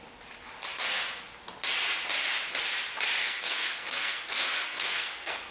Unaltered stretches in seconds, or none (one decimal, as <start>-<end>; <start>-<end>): 0.0-3.2